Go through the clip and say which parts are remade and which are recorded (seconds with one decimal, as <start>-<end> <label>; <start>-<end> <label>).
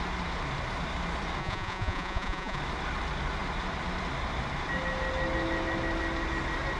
0.0-1.4 recorded; 1.4-2.6 remade; 2.6-6.8 recorded